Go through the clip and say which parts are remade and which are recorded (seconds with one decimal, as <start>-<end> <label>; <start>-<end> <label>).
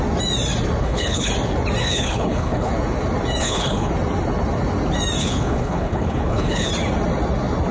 0.0-0.8 recorded; 0.8-1.3 remade; 1.3-1.8 recorded; 1.8-2.7 remade; 2.7-3.4 recorded; 3.4-3.9 remade; 3.9-5.2 recorded; 5.2-6.7 remade; 6.7-7.7 recorded